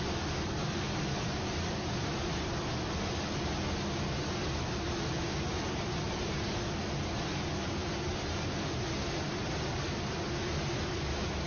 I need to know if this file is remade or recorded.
recorded